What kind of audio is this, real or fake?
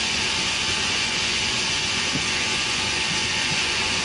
fake